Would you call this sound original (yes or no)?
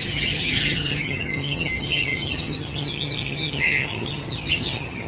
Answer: no